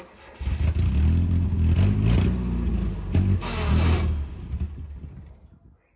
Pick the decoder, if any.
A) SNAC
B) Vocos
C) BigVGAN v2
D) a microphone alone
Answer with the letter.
D